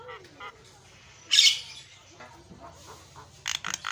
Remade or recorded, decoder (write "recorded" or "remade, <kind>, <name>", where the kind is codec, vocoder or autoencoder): recorded